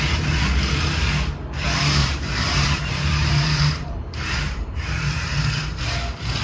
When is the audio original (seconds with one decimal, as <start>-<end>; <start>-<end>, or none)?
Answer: 0.0-2.0; 5.8-6.4